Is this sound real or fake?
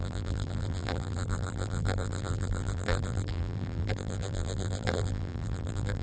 fake